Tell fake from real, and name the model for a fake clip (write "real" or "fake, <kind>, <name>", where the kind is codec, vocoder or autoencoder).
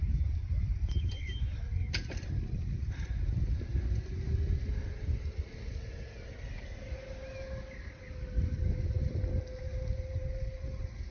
real